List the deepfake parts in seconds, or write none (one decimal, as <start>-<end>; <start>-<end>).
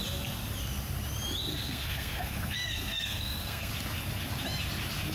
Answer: 1.5-3.7